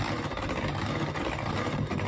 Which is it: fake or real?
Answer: real